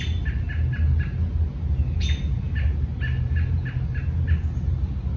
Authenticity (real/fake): real